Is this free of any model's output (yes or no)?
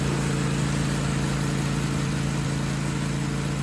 yes